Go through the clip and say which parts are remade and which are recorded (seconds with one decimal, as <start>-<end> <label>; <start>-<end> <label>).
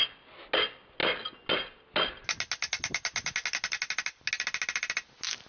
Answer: 0.0-5.5 recorded